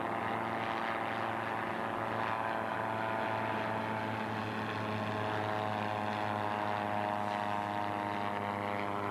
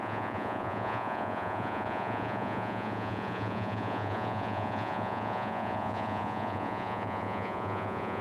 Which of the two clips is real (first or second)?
first